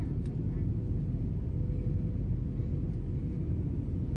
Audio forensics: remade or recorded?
recorded